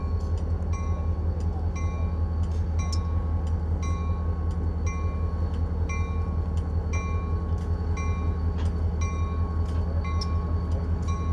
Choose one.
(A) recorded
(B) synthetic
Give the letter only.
A